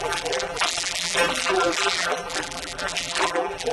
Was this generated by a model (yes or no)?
yes